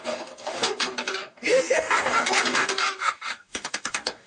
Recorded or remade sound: remade